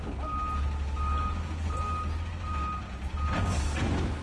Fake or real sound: real